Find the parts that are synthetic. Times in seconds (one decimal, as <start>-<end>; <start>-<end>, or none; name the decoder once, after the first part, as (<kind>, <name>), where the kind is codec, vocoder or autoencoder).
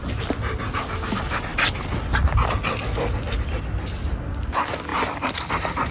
none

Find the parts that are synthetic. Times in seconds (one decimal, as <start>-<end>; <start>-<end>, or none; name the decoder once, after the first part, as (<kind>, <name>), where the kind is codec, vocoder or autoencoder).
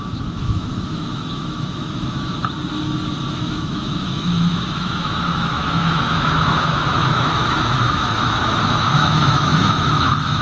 0.0-2.4 (autoencoder, DAC-VAE); 3.3-10.4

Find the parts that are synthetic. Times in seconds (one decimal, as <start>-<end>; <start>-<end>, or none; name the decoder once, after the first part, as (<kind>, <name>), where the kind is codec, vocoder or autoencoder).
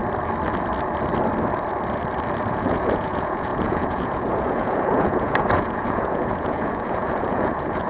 2.5-7.9 (vocoder, Vocos)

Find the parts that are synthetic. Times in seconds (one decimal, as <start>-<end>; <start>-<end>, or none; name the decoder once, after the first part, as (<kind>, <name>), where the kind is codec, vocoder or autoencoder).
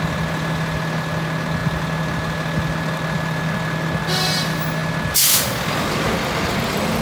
none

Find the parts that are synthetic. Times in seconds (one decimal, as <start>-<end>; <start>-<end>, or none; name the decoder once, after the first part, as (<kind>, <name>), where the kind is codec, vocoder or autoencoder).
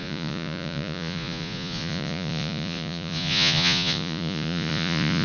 0.0-5.2 (vocoder, Vocos)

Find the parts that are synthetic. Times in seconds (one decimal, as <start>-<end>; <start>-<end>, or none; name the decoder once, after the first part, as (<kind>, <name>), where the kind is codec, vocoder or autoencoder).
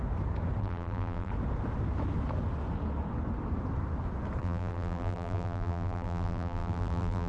0.6-1.3 (vocoder, BigVGAN v2); 4.4-7.3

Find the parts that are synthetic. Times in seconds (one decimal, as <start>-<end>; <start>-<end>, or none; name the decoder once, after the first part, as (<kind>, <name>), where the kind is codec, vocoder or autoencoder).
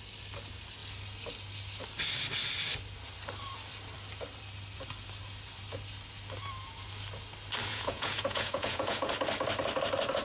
7.7-9.1 (vocoder, Vocos)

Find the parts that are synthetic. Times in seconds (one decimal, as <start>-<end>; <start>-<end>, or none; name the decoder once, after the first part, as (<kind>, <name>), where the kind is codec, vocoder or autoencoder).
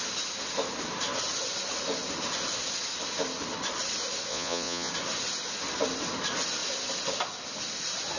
4.3-4.9 (vocoder, Vocos)